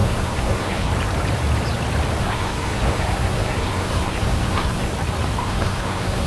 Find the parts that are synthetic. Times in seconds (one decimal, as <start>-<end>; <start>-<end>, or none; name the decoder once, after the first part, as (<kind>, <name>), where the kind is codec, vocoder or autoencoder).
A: 0.0-0.9 (codec, SNAC); 2.2-4.9; 5.4-6.3